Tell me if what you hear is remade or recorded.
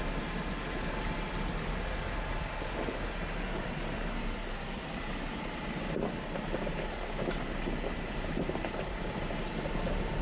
recorded